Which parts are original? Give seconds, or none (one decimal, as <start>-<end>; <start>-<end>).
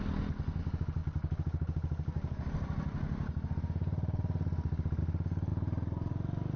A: 0.0-6.6